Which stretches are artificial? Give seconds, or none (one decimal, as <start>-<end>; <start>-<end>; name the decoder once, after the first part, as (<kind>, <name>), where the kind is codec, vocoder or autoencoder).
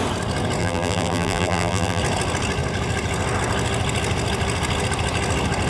0.6-2.0 (vocoder, BigVGAN v2)